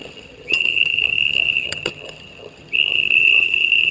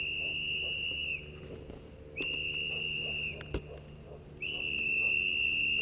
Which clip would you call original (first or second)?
second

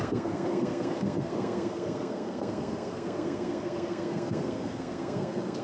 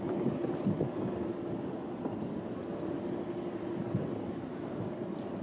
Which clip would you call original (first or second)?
second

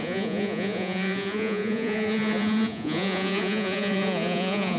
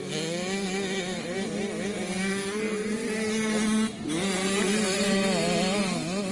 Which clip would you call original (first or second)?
second